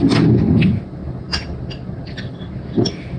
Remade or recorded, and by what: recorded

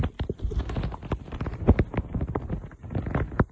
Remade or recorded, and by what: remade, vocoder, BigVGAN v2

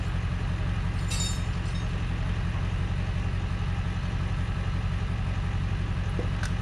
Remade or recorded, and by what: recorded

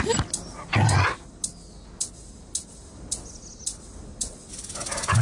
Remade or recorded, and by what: recorded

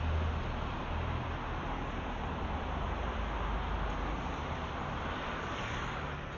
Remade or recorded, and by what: recorded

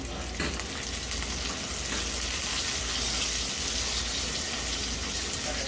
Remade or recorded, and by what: recorded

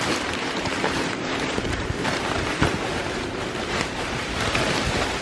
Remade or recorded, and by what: remade, vocoder, BigVGAN v2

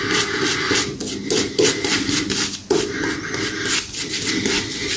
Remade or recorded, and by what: recorded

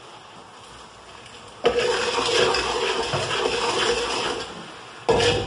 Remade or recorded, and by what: recorded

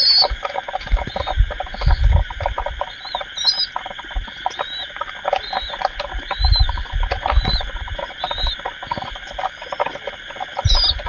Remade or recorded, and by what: recorded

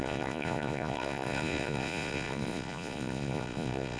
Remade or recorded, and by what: remade, vocoder, Vocos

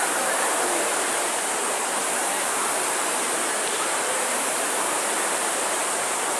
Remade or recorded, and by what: remade, vocoder, BigVGAN v2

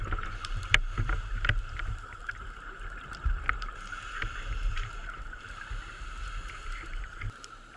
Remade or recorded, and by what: remade, vocoder, BigVGAN v2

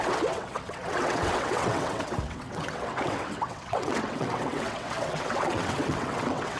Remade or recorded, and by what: remade, vocoder, WaveNeXt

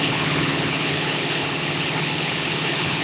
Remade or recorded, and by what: remade, codec, HILCodec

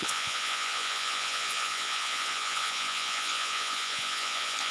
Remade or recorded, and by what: remade, vocoder, Vocos